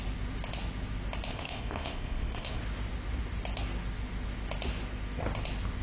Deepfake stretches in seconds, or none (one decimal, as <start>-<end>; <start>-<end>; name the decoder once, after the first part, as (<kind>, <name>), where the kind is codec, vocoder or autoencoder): 1.3-2.6 (codec, ZipCodec)